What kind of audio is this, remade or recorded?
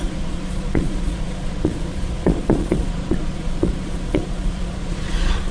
remade